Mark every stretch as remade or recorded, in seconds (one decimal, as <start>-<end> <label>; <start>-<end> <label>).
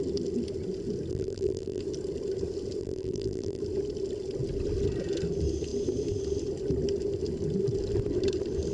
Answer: 0.0-1.1 recorded; 1.1-1.8 remade; 1.8-2.8 recorded; 2.8-3.6 remade; 3.6-8.7 recorded